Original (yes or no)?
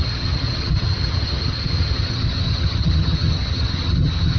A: no